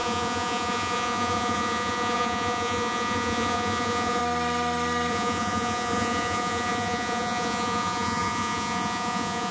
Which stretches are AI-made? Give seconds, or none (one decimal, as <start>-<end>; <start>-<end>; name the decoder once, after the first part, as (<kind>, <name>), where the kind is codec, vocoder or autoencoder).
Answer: 0.0-4.2 (vocoder, Vocos); 5.1-9.5